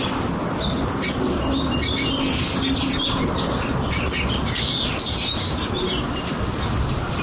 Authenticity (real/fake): real